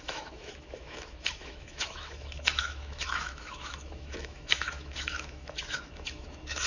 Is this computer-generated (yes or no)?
yes